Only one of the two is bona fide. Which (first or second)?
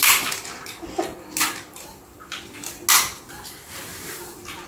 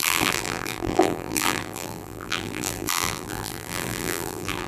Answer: first